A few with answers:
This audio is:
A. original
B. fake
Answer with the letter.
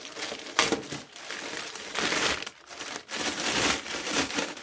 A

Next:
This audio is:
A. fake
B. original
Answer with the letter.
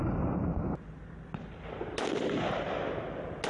B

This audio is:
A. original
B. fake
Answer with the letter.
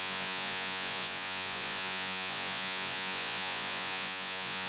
B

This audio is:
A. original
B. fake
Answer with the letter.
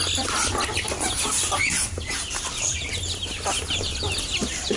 A